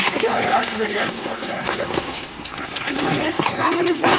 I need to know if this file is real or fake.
fake